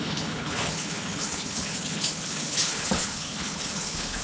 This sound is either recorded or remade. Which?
remade